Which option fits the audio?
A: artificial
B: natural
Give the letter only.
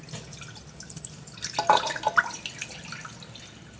B